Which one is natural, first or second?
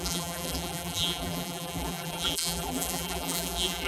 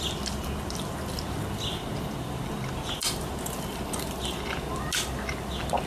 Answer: second